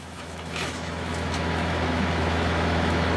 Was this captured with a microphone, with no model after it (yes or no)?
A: no